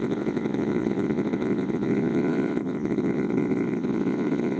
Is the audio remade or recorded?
remade